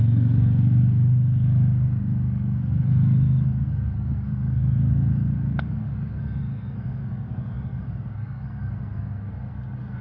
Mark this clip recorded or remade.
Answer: remade